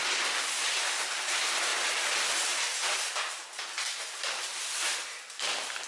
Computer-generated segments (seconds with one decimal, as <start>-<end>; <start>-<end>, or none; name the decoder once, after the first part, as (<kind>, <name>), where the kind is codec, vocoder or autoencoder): none

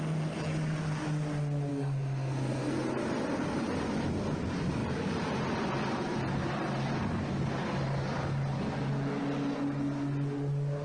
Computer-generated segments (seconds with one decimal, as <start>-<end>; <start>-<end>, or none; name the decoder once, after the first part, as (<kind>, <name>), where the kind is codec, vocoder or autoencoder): 1.7-2.7 (codec, SNAC)

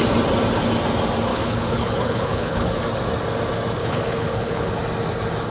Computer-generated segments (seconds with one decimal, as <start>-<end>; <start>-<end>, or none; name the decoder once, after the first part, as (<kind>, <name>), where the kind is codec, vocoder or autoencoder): 1.3-2.8 (codec, HILCodec); 3.8-4.7

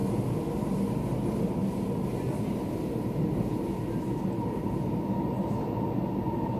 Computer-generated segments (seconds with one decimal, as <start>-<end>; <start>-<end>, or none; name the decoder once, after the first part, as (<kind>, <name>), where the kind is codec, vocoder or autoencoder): none

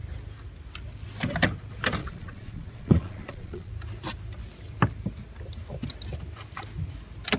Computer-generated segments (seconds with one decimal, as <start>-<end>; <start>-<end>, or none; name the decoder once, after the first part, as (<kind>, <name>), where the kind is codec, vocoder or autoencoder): 2.0-3.7 (vocoder, Vocos)

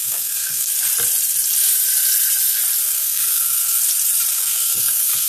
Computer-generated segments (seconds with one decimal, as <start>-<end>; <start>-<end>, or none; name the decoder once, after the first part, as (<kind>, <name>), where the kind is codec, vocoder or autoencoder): 0.0-0.7 (codec, SNAC); 2.8-3.8; 4.3-5.3

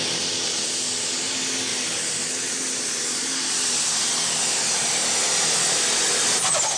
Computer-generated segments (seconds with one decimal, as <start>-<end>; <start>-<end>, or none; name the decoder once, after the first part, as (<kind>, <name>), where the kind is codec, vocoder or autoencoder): none

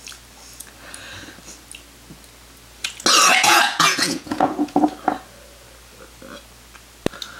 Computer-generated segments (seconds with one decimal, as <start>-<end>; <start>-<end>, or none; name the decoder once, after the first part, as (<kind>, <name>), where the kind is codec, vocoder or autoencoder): 3.3-4.8 (vocoder, Vocos)